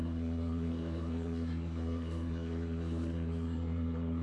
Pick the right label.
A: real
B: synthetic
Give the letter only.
B